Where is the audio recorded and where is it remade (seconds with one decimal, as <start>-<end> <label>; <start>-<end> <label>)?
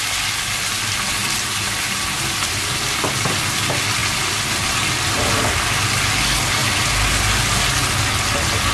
0.0-8.7 recorded